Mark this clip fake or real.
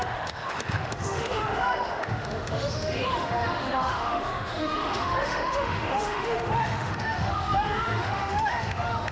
fake